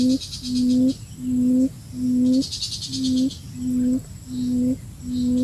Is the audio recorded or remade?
recorded